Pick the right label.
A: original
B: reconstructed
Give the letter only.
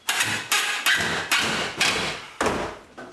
A